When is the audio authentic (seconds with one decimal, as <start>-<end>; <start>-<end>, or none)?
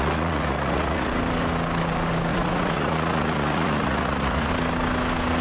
1.1-2.3; 4.5-5.4